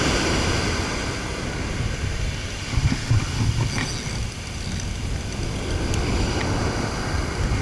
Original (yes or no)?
yes